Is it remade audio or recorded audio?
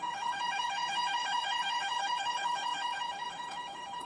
remade